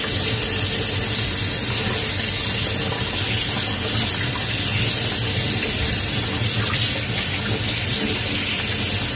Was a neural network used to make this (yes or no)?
no